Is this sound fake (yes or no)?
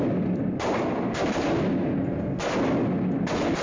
no